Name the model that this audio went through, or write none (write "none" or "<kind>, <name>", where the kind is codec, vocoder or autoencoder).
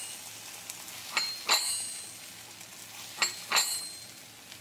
none